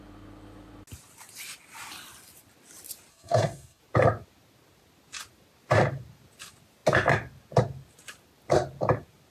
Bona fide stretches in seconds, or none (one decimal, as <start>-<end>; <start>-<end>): 0.0-3.1; 3.8-9.3